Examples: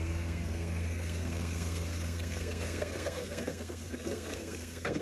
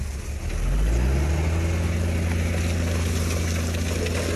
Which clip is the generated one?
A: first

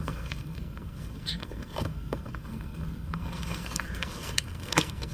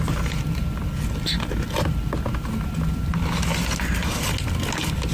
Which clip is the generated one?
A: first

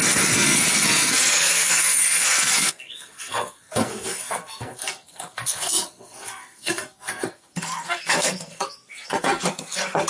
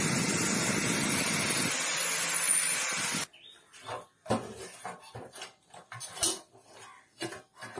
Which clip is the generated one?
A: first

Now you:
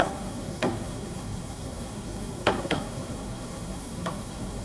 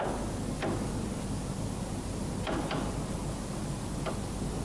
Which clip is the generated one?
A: first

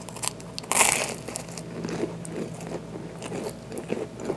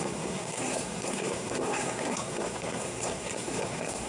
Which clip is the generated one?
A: second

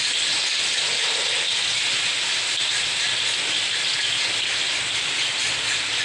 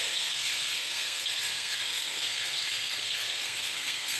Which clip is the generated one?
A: second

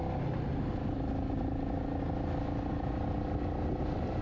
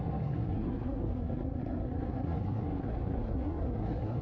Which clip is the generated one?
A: second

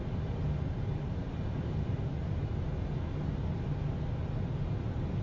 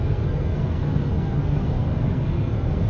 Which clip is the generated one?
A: second